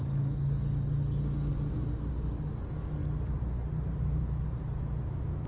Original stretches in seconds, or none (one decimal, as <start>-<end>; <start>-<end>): 0.0-1.5; 2.1-3.0; 5.0-5.5